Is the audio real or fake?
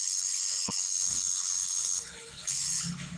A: fake